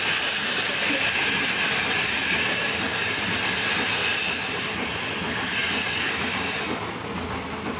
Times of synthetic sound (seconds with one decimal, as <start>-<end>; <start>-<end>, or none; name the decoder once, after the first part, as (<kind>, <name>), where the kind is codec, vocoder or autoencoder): 4.0-4.9 (vocoder, BigVGAN v2)